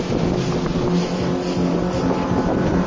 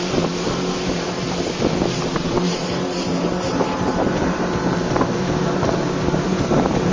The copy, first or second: second